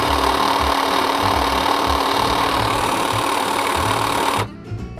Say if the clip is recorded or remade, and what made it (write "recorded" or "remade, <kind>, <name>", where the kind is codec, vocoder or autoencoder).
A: remade, vocoder, BigVGAN v2